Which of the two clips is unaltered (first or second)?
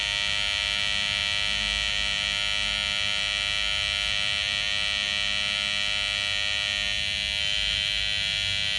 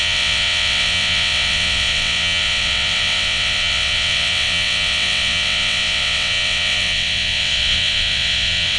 first